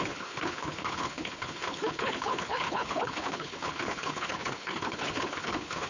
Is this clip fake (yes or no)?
yes